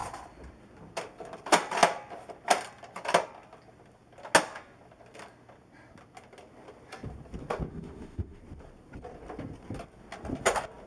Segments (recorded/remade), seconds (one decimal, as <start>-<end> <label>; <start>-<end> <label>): 0.0-7.7 recorded; 7.7-8.4 remade; 8.4-10.9 recorded